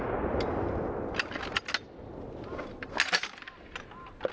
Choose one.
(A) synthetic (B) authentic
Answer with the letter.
B